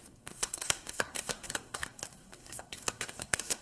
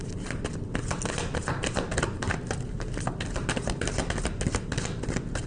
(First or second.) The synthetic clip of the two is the first